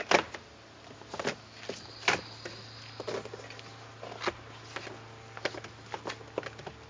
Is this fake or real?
real